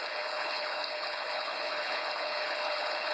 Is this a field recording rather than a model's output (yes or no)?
no